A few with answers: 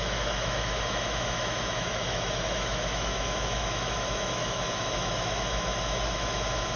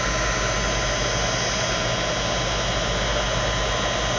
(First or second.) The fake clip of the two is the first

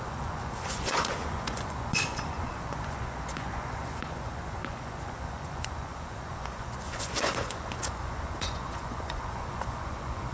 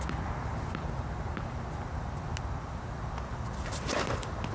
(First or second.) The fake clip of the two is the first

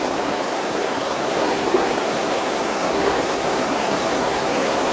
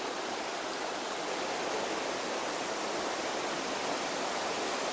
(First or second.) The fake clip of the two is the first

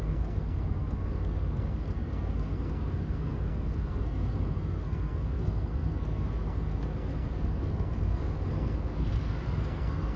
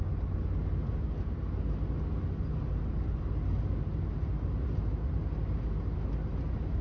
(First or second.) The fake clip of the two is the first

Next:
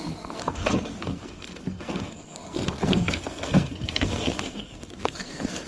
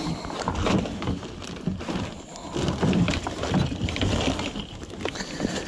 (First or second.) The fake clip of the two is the first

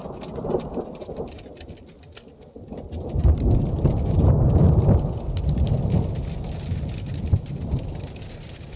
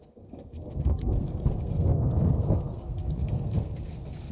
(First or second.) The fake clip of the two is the second